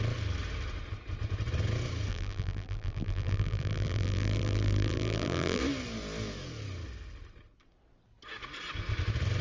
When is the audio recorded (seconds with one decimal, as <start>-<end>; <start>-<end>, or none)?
0.0-2.1; 5.6-9.4